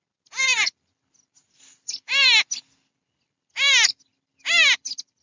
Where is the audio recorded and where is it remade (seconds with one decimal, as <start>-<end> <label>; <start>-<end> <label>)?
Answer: 0.0-5.2 recorded